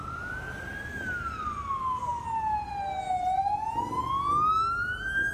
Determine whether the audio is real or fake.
real